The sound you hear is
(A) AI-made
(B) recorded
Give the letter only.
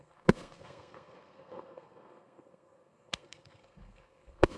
A